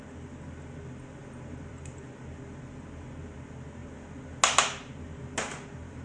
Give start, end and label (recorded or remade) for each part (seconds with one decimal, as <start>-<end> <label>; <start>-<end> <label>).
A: 0.0-6.0 recorded